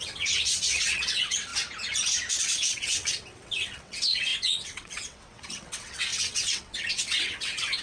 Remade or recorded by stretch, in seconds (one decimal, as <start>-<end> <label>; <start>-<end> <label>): 0.0-1.5 remade; 1.5-2.4 recorded; 2.4-7.8 remade

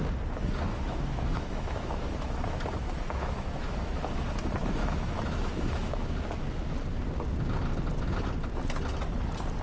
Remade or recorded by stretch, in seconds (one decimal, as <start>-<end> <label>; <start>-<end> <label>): 0.0-0.7 recorded; 0.7-4.0 remade; 4.0-4.6 recorded; 4.6-6.0 remade; 6.0-9.6 recorded

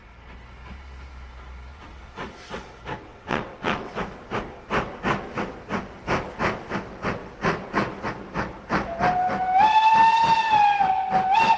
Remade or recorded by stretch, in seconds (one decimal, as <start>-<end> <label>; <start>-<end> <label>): 0.0-1.7 recorded; 1.7-2.7 remade; 2.7-3.1 recorded; 3.1-3.9 remade; 3.9-11.6 recorded

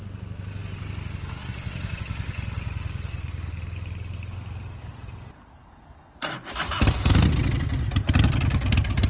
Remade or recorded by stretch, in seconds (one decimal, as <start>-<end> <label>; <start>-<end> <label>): 0.0-9.1 recorded

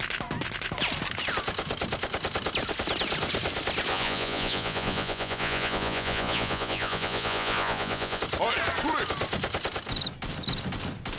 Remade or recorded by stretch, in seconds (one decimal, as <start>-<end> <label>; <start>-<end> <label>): 0.0-3.9 recorded; 3.9-8.2 remade; 8.2-11.2 recorded

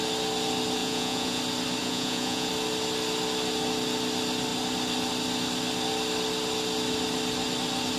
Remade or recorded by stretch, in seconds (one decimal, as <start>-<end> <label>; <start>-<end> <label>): 0.0-0.8 recorded; 0.8-1.4 remade; 1.4-1.8 recorded; 1.8-2.5 remade; 2.5-8.0 recorded

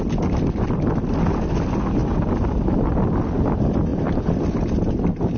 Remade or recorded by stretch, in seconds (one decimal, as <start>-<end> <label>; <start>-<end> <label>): 0.0-2.0 recorded; 2.0-2.9 remade; 2.9-3.9 recorded; 3.9-4.4 remade; 4.4-5.4 recorded